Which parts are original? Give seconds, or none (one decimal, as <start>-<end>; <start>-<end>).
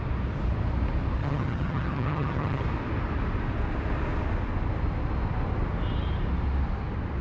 0.0-1.2; 2.6-7.2